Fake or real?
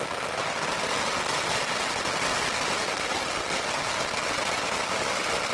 real